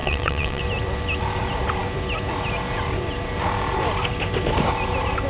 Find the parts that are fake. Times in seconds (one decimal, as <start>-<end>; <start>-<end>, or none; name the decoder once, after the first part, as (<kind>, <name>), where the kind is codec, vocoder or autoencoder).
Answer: 0.0-0.6 (vocoder, WaveNeXt)